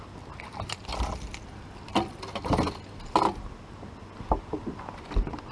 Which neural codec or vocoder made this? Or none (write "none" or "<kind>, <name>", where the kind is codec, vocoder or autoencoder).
none